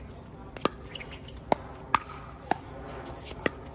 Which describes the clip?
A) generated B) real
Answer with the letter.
B